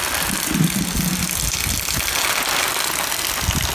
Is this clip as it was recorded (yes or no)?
yes